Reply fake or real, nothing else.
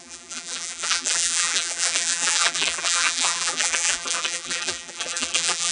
fake